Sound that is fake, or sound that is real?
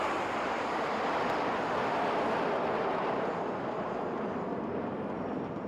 real